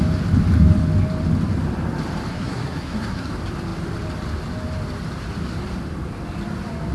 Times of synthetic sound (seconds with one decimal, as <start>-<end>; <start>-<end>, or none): 2.3-3.3